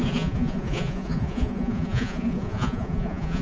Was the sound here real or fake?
fake